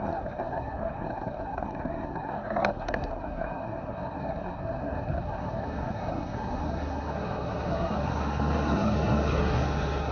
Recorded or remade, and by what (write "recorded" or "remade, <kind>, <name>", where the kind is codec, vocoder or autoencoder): remade, codec, SNAC